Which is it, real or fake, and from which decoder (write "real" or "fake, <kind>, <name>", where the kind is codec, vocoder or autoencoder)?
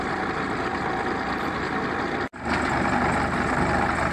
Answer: real